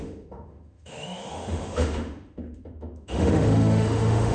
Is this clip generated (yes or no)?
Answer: yes